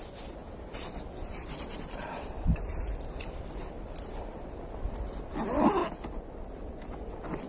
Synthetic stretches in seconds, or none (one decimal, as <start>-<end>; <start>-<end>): none